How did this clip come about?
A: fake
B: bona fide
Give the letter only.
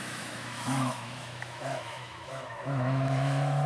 A